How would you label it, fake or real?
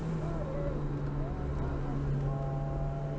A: real